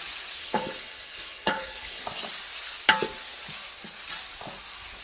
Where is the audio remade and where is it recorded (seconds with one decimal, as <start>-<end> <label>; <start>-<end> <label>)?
0.0-0.4 recorded; 0.4-2.0 remade; 2.0-5.0 recorded